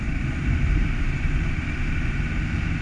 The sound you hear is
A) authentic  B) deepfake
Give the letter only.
B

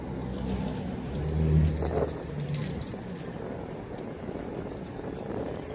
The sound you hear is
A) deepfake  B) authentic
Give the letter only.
B